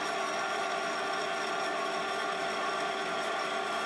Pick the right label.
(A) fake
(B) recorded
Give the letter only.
B